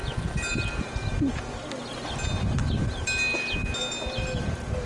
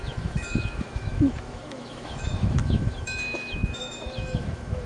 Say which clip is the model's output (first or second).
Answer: second